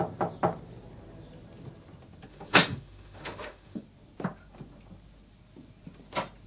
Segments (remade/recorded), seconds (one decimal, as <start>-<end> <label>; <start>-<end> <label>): 0.0-2.3 recorded; 2.3-3.8 remade; 3.8-6.5 recorded

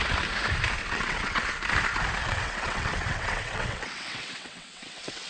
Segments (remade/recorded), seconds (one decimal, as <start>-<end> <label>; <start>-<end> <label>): 0.0-0.8 recorded; 0.8-1.4 remade; 1.4-2.2 recorded; 2.2-5.3 remade

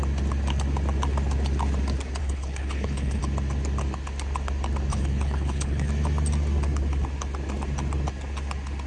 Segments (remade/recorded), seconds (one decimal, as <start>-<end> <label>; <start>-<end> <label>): 0.0-2.2 recorded; 2.2-3.2 remade; 3.2-4.9 recorded; 4.9-5.9 remade; 5.9-8.9 recorded

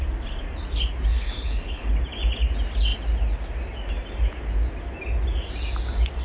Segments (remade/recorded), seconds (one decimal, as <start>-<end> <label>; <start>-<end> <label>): 0.0-1.1 recorded; 1.1-1.9 remade; 1.9-6.2 recorded

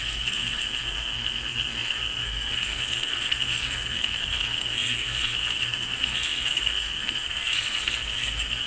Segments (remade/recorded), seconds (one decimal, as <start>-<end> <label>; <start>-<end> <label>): 0.0-8.7 remade